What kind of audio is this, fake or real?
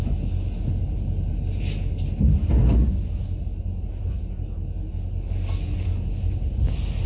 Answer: real